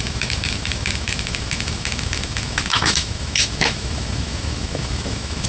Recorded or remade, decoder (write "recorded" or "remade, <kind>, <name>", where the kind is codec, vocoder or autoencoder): remade, autoencoder, DAC-VAE